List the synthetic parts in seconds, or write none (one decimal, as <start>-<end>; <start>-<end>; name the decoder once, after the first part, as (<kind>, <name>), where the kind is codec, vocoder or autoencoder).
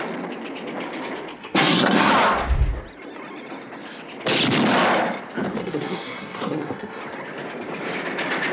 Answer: 1.4-2.1 (codec, SNAC); 5.6-7.0